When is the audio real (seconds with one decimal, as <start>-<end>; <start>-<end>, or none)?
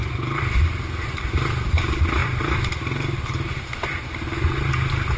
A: 0.0-5.2